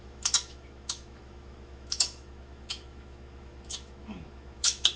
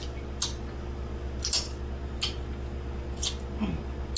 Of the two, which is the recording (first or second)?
second